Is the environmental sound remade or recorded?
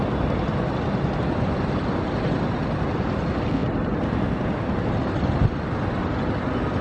recorded